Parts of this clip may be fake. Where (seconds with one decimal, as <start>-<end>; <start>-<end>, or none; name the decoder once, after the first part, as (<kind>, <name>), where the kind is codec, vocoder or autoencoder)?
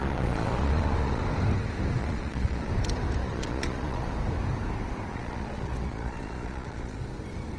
0.0-1.2 (vocoder, Vocos); 2.0-2.7; 3.2-4.1; 5.1-7.0